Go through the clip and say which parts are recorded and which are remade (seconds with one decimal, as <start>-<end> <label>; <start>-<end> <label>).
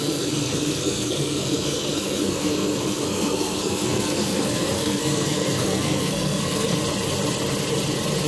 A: 0.0-6.8 remade; 6.8-8.3 recorded